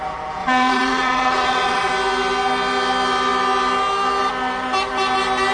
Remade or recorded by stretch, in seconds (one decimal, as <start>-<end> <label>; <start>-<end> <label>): 0.0-0.4 recorded; 0.4-1.9 remade; 1.9-5.5 recorded